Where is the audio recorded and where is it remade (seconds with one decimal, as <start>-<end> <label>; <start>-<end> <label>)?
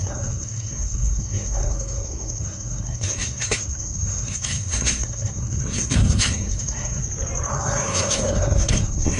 0.0-7.0 remade; 7.0-7.5 recorded; 7.5-9.2 remade